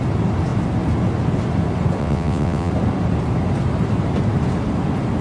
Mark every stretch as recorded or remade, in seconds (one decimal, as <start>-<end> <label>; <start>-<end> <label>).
0.0-2.0 recorded; 2.0-2.7 remade; 2.7-5.2 recorded